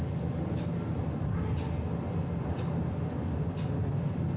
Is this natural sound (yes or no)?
yes